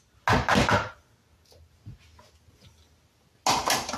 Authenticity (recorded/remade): recorded